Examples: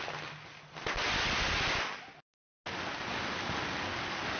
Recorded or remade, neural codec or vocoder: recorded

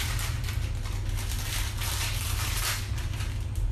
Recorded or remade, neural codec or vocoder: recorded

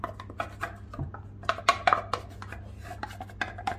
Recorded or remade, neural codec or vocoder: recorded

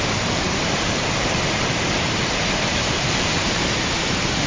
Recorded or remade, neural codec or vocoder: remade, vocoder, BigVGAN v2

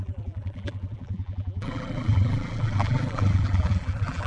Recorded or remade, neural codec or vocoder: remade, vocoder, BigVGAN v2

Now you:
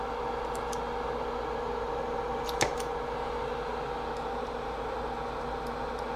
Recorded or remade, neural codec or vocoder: recorded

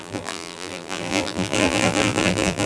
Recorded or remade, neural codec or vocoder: remade, vocoder, BigVGAN v2